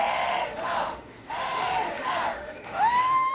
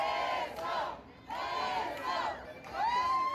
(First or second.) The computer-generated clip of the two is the first